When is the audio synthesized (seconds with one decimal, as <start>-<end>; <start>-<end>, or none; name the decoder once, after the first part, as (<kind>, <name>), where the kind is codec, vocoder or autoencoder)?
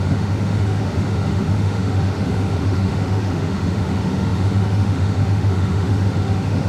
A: 0.0-6.7 (autoencoder, DAC-VAE)